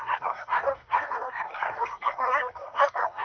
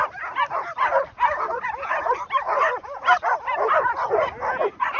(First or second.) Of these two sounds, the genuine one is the second